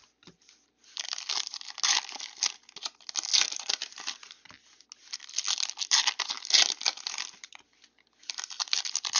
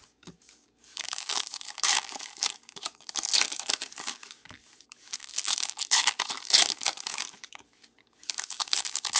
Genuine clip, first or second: first